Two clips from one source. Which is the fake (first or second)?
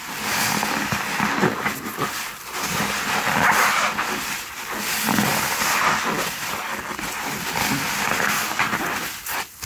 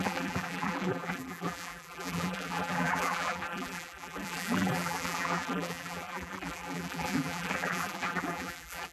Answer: second